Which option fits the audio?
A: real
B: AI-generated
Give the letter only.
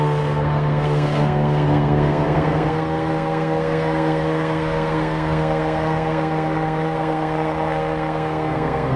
B